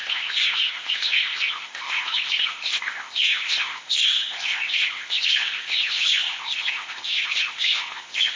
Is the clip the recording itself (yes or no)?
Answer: no